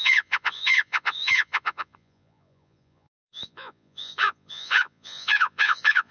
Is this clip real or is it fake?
fake